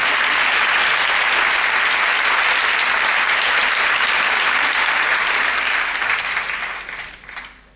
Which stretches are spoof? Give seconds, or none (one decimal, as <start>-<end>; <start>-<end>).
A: none